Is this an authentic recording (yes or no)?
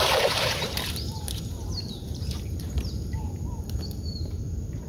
no